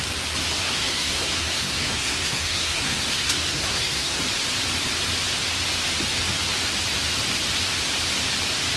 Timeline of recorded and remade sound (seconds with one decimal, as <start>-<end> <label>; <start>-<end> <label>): 0.0-0.6 recorded; 0.6-4.2 remade; 4.2-8.8 recorded